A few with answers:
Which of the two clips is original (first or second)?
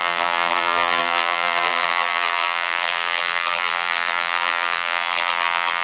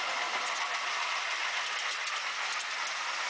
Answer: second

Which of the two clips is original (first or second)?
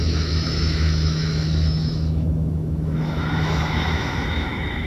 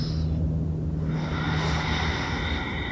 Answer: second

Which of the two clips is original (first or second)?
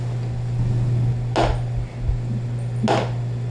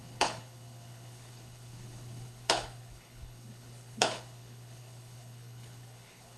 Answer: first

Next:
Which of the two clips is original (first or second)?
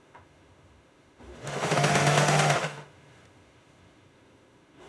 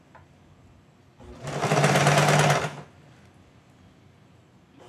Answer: second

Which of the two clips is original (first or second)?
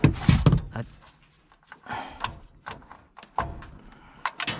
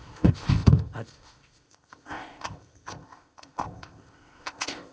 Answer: first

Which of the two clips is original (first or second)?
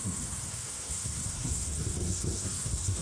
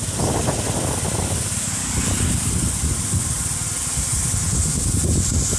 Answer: second